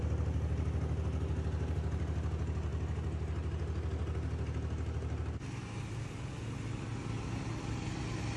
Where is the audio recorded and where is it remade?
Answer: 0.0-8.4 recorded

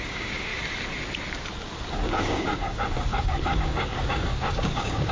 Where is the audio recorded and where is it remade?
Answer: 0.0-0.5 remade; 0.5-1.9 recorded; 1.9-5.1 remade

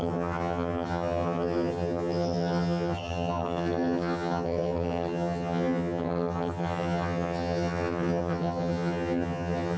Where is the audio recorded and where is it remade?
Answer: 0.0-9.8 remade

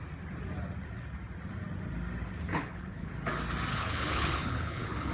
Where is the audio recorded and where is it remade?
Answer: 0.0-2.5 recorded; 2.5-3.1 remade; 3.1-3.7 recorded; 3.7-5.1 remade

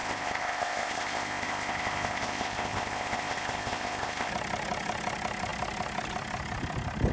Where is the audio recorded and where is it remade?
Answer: 0.0-4.3 remade; 4.3-7.1 recorded